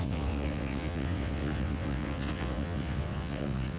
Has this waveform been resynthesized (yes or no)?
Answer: yes